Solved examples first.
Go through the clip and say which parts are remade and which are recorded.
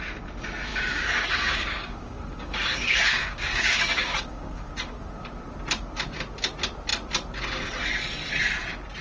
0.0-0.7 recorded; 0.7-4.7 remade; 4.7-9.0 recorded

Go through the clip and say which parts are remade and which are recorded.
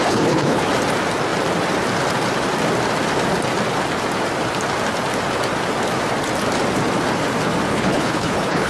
0.0-0.6 remade; 0.6-7.7 recorded; 7.7-8.7 remade